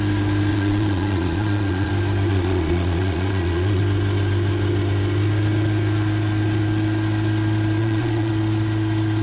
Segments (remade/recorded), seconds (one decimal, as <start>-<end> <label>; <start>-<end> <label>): 0.0-0.5 recorded; 0.5-1.9 remade; 1.9-2.3 recorded; 2.3-3.8 remade; 3.8-7.8 recorded; 7.8-8.3 remade; 8.3-9.2 recorded